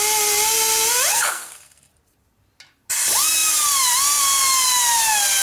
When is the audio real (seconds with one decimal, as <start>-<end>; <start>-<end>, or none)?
0.0-1.1; 1.9-5.4